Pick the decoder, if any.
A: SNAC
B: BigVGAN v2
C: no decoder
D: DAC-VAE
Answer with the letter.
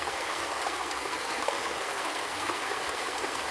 A